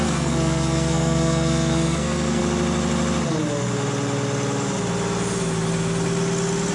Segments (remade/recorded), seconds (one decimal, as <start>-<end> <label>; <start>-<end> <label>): 0.0-2.4 remade; 2.4-6.7 recorded